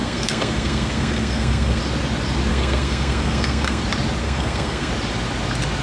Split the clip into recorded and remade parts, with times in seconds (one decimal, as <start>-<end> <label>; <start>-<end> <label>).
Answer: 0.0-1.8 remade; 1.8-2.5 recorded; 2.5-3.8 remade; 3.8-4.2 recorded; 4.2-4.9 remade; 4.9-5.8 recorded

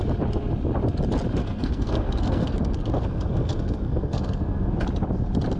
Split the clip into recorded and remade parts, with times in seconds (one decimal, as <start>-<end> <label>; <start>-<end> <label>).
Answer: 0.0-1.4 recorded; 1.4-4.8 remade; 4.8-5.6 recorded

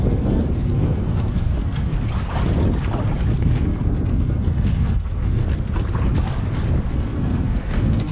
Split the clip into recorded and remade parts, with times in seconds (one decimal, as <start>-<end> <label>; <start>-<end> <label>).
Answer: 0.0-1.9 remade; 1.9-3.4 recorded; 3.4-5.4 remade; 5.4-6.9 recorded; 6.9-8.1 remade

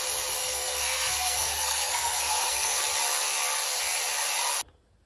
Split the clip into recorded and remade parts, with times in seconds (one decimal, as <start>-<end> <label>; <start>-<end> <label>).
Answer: 0.0-0.4 recorded; 0.4-2.8 remade; 2.8-5.1 recorded

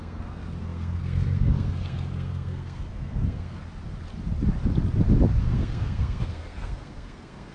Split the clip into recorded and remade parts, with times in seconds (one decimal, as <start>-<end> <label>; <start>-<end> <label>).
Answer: 0.0-3.6 remade; 3.6-5.4 recorded; 5.4-7.5 remade

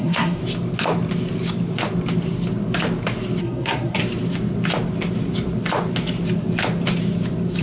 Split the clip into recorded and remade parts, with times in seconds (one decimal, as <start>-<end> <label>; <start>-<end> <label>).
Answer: 0.0-0.4 remade; 0.4-3.4 recorded; 3.4-4.0 remade; 4.0-7.6 recorded

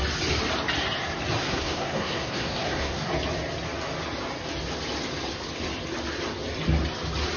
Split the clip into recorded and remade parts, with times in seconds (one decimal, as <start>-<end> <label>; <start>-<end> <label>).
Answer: 0.0-1.4 recorded; 1.4-3.1 remade; 3.1-7.4 recorded